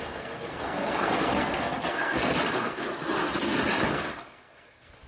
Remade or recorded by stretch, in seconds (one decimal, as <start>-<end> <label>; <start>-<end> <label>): 0.0-2.9 remade; 2.9-3.9 recorded; 3.9-5.1 remade